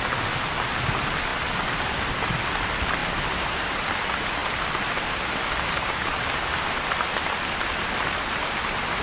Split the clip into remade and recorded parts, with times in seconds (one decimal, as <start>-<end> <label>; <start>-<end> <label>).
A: 0.0-3.0 recorded; 3.0-3.9 remade; 3.9-9.0 recorded